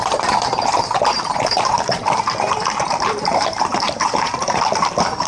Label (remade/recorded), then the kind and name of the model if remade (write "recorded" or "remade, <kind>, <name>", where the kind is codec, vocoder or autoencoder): remade, vocoder, BigVGAN v2